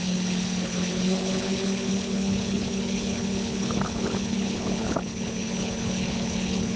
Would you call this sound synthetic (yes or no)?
yes